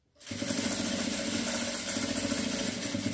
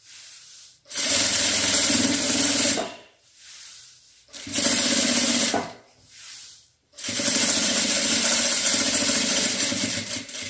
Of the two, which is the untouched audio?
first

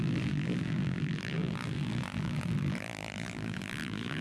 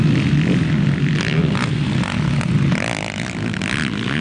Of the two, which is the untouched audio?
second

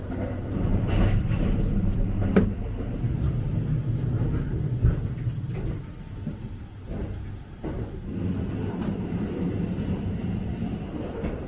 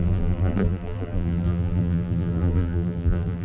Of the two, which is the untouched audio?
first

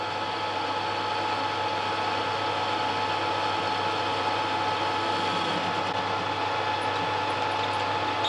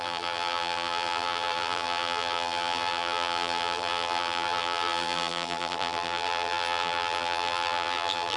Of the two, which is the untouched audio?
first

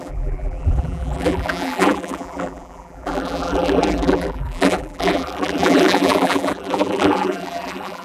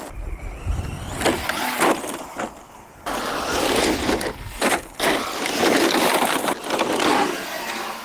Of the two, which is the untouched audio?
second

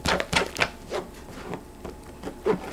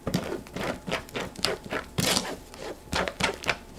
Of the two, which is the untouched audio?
first